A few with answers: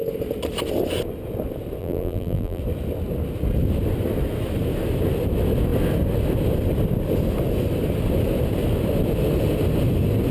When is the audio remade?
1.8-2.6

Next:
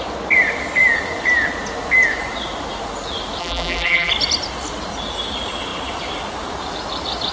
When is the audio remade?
3.4-4.1

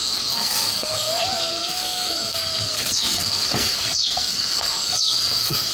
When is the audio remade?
0.0-5.7

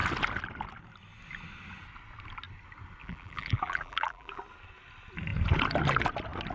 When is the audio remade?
3.0-4.4

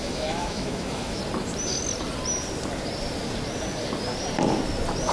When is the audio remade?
0.0-1.2